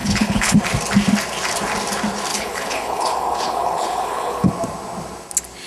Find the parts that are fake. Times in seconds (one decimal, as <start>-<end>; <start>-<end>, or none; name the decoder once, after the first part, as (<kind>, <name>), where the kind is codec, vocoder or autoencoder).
0.0-0.6 (codec, HILCodec); 2.3-4.5